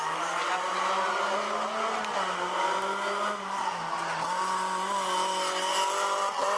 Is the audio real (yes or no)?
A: yes